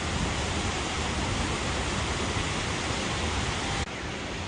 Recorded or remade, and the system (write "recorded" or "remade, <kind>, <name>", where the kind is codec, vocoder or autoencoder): recorded